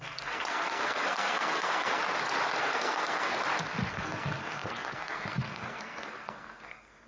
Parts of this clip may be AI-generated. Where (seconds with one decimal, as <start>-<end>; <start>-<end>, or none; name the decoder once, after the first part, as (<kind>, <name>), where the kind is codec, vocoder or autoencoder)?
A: 0.0-2.0 (codec, SNAC); 2.6-3.3; 3.9-7.1